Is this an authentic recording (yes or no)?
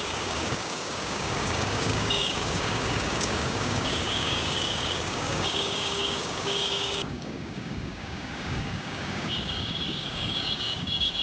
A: no